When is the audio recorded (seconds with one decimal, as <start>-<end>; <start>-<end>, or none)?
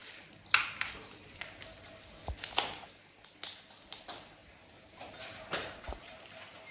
0.0-1.0; 2.2-4.0; 4.4-5.2